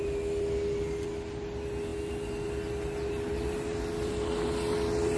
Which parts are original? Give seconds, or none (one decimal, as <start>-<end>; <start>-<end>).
0.0-5.2